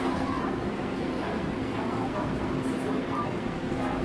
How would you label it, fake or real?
fake